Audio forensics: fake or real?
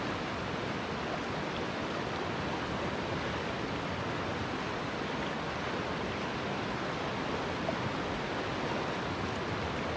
real